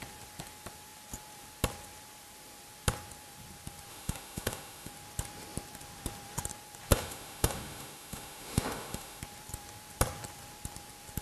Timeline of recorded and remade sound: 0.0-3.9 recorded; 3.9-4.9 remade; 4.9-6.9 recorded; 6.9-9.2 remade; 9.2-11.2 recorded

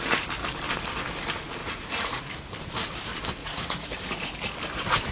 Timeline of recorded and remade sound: 0.0-1.6 recorded; 1.6-2.3 remade; 2.3-3.4 recorded; 3.4-4.3 remade; 4.3-5.1 recorded